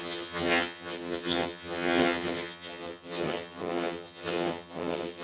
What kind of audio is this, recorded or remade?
remade